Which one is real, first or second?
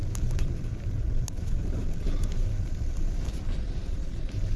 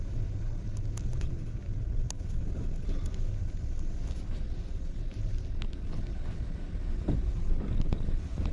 second